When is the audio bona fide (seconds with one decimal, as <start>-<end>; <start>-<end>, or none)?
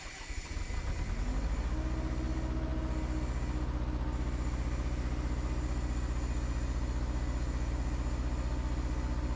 0.0-9.4